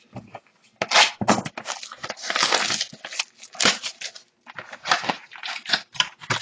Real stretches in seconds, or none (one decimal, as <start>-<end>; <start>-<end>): 0.0-6.4